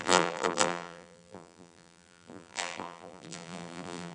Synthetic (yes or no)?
yes